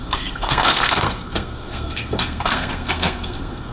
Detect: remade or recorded remade